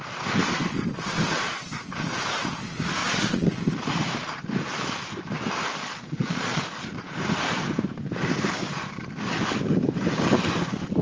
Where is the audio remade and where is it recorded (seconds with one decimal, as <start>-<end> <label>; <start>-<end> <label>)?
0.0-3.0 recorded; 3.0-3.6 remade; 3.6-5.8 recorded; 5.8-6.6 remade; 6.6-11.0 recorded